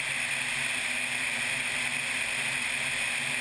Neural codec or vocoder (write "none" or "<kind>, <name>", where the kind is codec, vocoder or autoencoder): none